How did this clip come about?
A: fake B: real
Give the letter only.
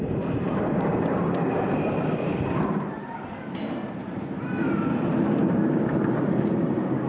A